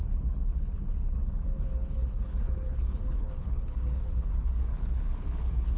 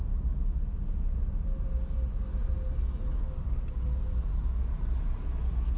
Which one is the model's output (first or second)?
first